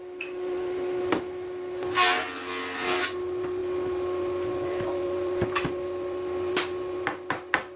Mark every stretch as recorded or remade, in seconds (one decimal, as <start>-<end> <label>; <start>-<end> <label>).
0.0-7.8 recorded